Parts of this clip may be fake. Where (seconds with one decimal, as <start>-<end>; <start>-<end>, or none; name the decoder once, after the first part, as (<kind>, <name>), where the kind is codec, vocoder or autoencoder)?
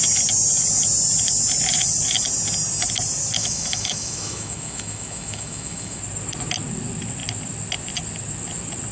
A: 3.4-6.0 (autoencoder, DAC-VAE)